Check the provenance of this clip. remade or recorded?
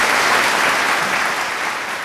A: recorded